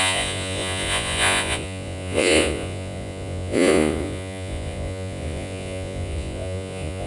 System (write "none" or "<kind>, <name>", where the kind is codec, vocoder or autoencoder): vocoder, Vocos